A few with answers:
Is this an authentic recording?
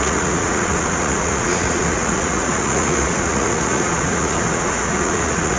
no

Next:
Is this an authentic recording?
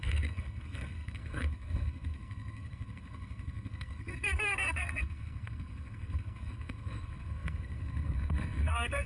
no